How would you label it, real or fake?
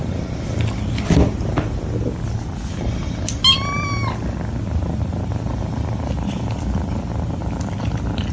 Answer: real